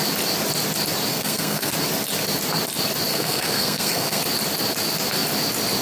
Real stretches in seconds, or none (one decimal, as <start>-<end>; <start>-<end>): 0.0-1.1; 1.7-3.1; 4.2-5.8